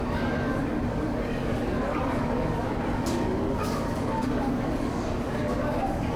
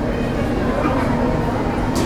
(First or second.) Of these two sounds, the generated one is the first